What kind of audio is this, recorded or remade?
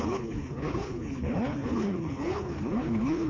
remade